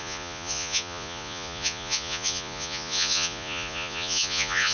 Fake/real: fake